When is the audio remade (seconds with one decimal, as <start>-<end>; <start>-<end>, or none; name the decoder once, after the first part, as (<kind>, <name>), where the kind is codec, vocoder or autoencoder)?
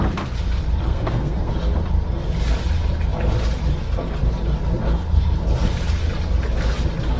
0.9-1.5 (codec, SNAC)